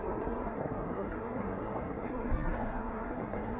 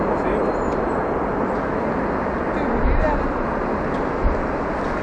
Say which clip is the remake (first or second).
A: first